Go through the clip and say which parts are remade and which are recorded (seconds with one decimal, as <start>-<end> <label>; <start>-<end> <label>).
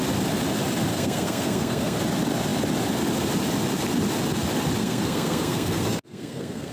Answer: 0.0-0.9 recorded; 0.9-2.0 remade; 2.0-4.8 recorded; 4.8-6.7 remade